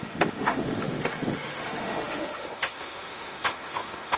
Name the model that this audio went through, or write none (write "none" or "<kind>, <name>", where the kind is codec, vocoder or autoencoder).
autoencoder, DAC-VAE